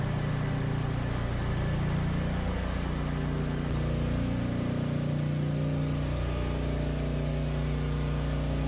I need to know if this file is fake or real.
real